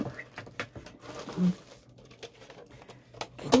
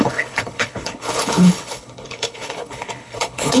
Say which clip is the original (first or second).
first